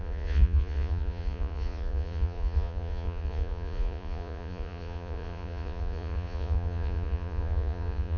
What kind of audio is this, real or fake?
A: fake